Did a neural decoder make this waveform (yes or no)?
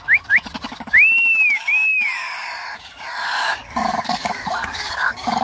yes